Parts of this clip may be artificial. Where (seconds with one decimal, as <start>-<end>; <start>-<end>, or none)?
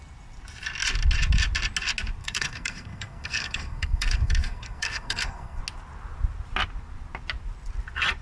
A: 2.2-5.6